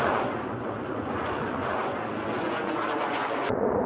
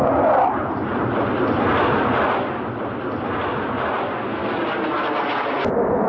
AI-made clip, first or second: first